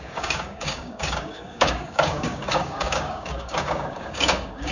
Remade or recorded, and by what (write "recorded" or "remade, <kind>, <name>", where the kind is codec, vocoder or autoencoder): remade, codec, DAC